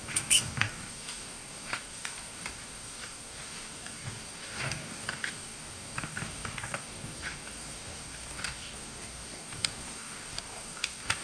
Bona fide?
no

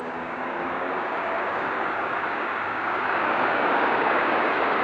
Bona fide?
no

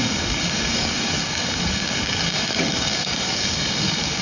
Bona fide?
no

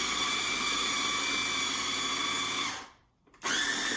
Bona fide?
yes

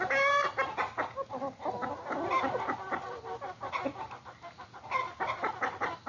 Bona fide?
yes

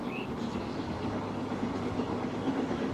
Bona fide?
no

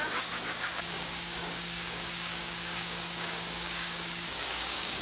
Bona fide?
no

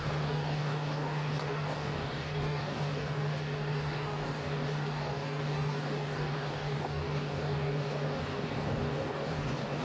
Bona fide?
no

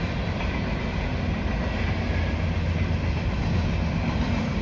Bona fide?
yes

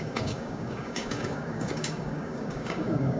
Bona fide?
no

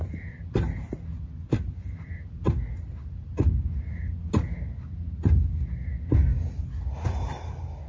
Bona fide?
yes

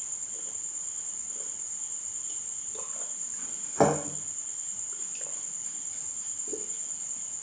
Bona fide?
yes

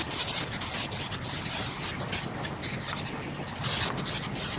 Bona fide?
yes